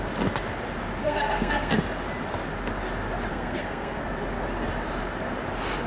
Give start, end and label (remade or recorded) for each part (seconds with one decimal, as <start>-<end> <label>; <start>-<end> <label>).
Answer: 0.0-1.0 recorded; 1.0-1.7 remade; 1.7-3.3 recorded; 3.3-4.0 remade; 4.0-5.9 recorded